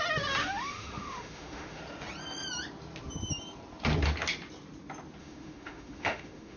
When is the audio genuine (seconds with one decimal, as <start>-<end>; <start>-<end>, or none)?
0.0-0.4; 1.8-5.2